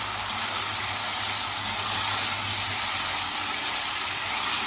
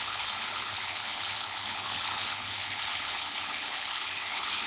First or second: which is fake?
second